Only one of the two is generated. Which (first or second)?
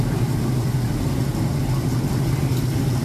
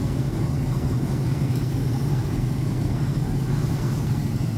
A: second